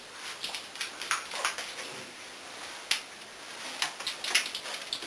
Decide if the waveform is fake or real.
real